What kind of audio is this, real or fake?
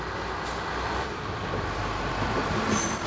real